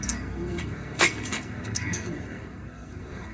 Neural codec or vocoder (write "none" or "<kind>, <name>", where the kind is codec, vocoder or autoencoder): codec, SNAC